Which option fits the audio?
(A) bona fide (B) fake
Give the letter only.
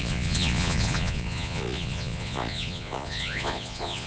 B